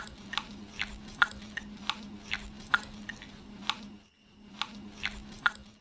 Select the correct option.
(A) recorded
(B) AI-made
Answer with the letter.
A